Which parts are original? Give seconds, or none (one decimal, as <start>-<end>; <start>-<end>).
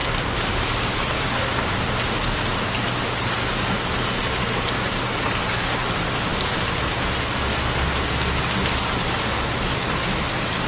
0.0-10.7